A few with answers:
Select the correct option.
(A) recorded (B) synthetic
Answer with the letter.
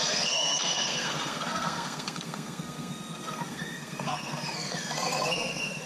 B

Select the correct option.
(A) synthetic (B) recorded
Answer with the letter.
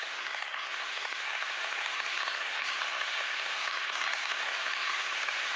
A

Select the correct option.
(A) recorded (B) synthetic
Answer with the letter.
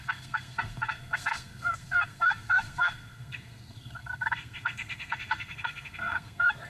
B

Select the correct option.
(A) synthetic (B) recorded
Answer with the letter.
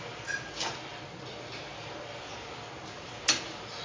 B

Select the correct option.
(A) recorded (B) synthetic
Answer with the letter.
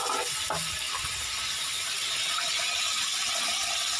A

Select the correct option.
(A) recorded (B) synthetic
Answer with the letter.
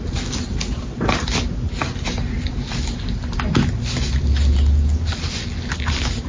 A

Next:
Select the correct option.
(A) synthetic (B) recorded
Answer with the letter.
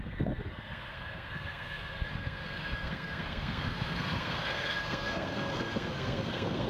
A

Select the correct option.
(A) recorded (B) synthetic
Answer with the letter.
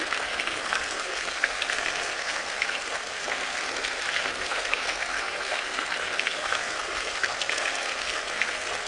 B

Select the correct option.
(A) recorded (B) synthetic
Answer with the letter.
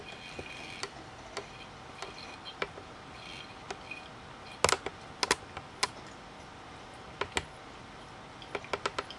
A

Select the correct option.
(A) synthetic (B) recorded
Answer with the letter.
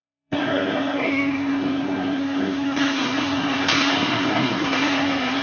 A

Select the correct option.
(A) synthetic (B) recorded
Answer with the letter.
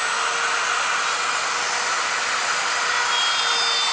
B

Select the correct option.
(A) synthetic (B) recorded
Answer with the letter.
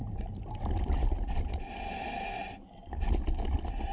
B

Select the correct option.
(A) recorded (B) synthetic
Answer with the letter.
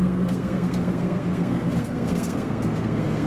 B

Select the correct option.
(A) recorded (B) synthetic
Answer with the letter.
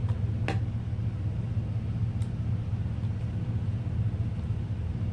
A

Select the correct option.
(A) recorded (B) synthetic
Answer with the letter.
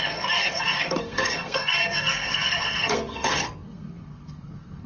B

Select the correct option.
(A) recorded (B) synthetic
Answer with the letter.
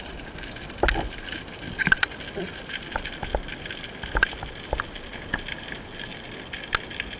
A